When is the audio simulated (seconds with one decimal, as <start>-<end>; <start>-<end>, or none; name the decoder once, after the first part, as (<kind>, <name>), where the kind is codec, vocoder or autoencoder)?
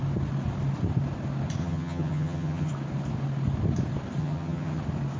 1.6-2.7 (vocoder, HiFi-GAN); 4.2-4.8